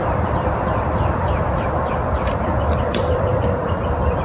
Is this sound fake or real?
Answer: fake